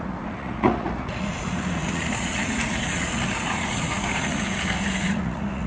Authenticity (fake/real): fake